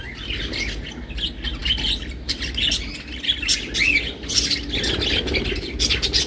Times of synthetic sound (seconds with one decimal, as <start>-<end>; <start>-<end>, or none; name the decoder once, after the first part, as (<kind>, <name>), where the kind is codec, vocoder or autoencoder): none